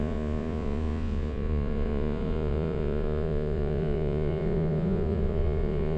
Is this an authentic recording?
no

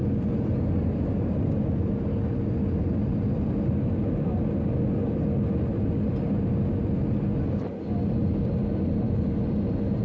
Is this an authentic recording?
yes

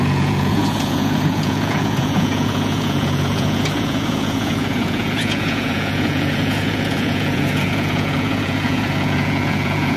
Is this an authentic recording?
no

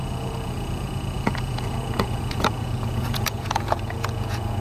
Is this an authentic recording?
no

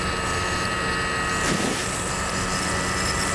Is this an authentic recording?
yes